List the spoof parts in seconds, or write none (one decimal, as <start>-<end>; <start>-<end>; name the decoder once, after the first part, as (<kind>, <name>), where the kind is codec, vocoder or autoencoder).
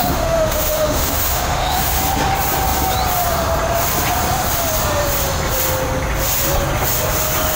0.0-2.0 (autoencoder, DAC-VAE)